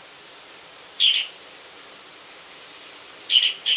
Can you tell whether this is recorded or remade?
remade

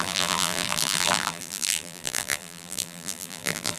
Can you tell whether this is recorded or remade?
remade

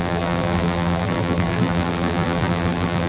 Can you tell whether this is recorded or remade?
remade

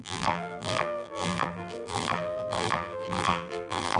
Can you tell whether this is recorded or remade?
remade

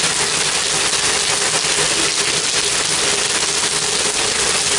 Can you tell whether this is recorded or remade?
recorded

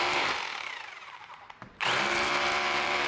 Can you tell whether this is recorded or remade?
remade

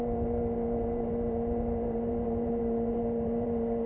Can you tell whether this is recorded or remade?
remade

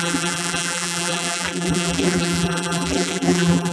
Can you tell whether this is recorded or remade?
remade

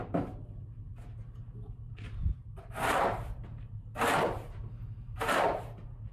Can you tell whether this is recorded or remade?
remade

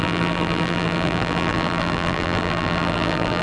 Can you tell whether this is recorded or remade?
remade